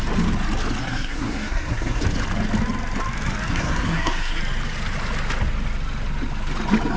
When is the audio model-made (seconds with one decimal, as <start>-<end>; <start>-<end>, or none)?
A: 0.8-2.0; 3.5-4.4